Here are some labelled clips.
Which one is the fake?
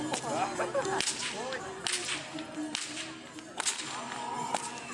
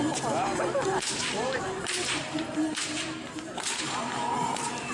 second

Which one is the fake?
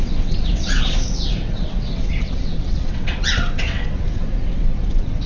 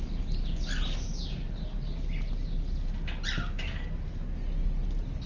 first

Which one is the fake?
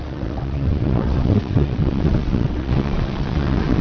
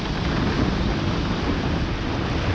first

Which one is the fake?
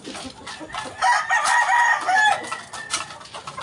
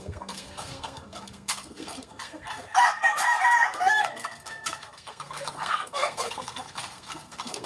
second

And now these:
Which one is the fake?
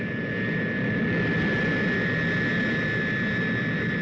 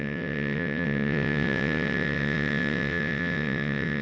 second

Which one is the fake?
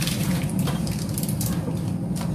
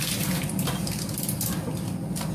first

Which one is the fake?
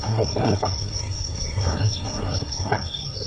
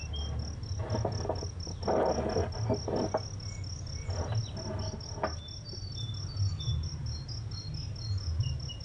first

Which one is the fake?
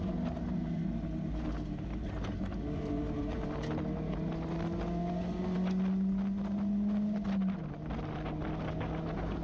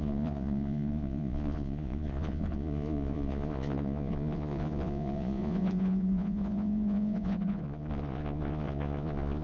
second